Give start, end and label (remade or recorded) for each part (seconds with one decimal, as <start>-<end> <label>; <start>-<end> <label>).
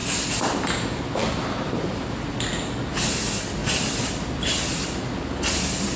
0.0-6.0 recorded